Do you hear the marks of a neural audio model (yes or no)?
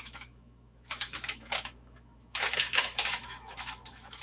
yes